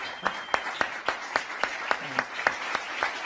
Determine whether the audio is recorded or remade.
remade